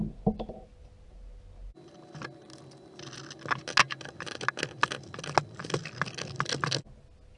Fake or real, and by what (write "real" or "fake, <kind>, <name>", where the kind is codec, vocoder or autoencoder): real